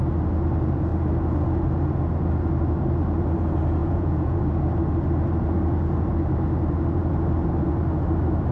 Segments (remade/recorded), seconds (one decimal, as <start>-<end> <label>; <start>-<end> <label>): 0.0-3.8 recorded; 3.8-4.4 remade; 4.4-8.5 recorded